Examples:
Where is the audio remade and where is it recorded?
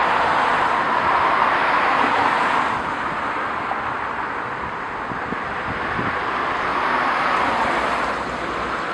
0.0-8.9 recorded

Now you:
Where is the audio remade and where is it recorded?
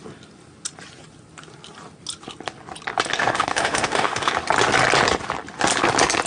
0.0-3.2 recorded; 3.2-4.3 remade; 4.3-6.3 recorded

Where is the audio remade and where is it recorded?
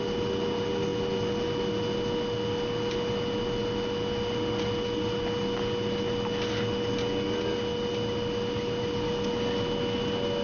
0.0-10.4 recorded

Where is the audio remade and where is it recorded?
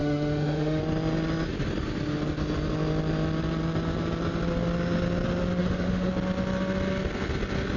0.0-0.8 remade; 0.8-5.6 recorded; 5.6-6.1 remade; 6.1-7.8 recorded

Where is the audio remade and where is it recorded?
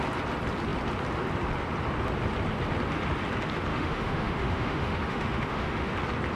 0.0-3.7 recorded; 3.7-5.9 remade; 5.9-6.4 recorded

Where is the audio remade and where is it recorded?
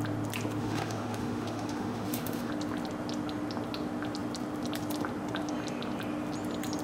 0.0-0.6 recorded; 0.6-2.5 remade; 2.5-6.8 recorded